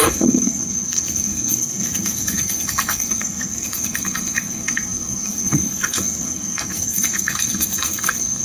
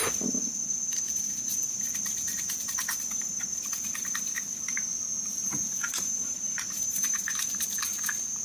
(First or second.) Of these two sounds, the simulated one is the first